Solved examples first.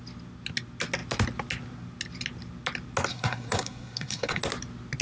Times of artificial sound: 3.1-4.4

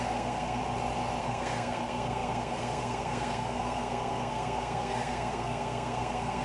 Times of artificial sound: 0.0-0.6; 1.2-6.4